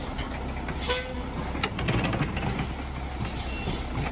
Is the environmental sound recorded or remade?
recorded